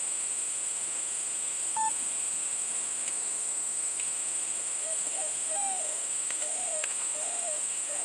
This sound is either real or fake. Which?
fake